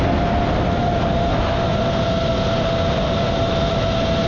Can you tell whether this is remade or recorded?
recorded